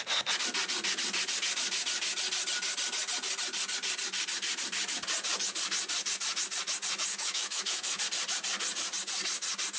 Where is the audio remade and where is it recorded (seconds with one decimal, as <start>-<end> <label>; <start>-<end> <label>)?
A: 0.0-7.1 recorded; 7.1-8.0 remade; 8.0-9.8 recorded